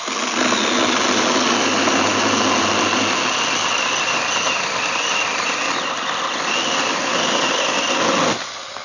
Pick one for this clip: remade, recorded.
recorded